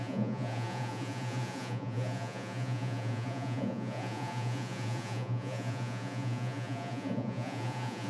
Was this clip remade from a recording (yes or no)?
yes